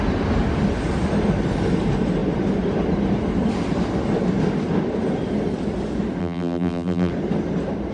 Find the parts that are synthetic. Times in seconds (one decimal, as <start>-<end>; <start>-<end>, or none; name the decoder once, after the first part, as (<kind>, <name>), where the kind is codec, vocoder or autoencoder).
6.2-7.1 (vocoder, BigVGAN v2)